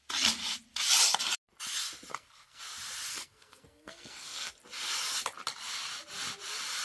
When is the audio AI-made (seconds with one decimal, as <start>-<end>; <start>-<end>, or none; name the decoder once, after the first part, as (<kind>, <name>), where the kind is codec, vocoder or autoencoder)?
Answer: 2.1-2.6 (codec, SNAC); 3.1-4.5

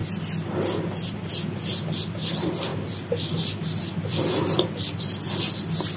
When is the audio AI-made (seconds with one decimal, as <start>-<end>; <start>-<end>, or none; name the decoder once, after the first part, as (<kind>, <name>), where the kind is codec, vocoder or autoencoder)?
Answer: none

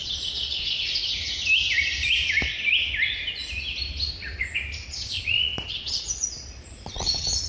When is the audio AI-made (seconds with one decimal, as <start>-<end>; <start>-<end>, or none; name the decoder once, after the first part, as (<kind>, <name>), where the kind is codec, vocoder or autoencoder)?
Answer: 0.0-1.0 (vocoder, Vocos); 4.9-7.5

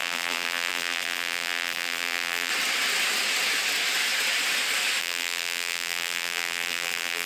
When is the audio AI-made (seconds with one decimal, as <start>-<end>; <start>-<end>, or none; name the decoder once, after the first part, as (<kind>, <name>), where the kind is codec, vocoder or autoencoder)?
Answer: 0.0-2.5 (vocoder, BigVGAN v2); 5.0-7.3

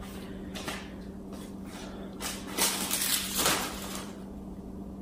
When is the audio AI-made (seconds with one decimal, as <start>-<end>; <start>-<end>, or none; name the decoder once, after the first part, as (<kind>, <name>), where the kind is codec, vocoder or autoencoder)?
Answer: 3.1-4.2 (vocoder, BigVGAN v2)